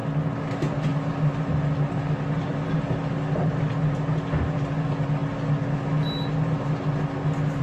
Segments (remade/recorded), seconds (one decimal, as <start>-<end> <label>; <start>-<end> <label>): 0.0-2.5 recorded; 2.5-3.7 remade; 3.7-7.6 recorded